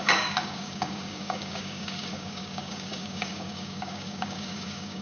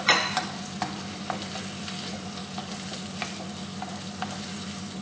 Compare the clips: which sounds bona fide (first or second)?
second